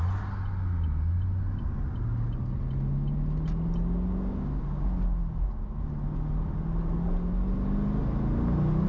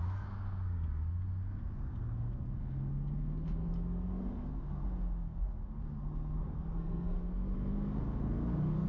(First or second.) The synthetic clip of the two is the second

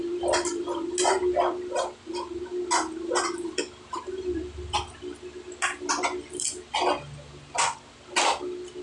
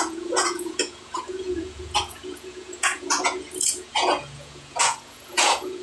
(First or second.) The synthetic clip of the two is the second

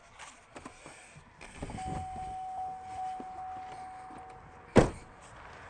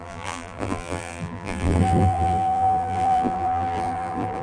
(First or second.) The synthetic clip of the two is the second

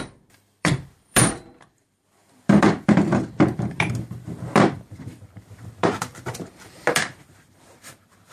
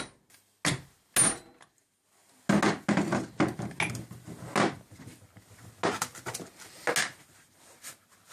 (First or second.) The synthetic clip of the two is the first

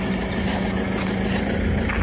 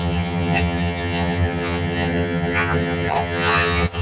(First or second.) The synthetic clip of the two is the second